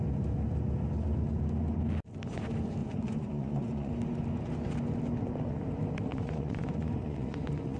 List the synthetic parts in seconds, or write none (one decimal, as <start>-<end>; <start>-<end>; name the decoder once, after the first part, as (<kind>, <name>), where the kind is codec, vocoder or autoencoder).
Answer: 2.8-3.9 (vocoder, Vocos); 6.1-7.8